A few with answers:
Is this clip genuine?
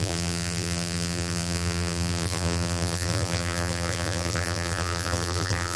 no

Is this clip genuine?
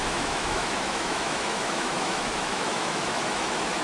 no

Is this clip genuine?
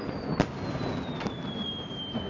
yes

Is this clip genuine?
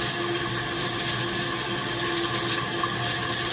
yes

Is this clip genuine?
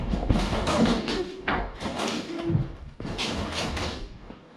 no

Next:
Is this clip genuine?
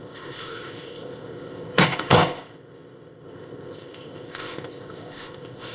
no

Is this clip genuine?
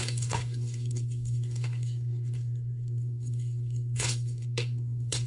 no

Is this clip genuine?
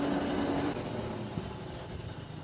yes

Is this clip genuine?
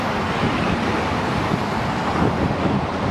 yes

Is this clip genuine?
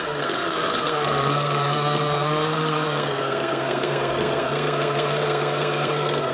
no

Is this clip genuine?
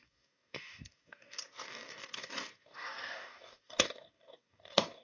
no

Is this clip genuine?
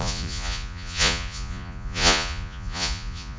no